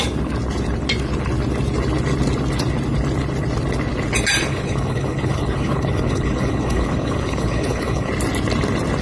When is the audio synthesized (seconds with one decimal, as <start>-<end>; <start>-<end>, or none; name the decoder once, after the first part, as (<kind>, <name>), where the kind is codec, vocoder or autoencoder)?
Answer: 4.5-8.1 (codec, HILCodec)